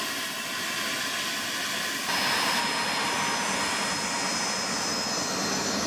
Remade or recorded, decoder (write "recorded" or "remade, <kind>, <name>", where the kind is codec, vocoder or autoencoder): recorded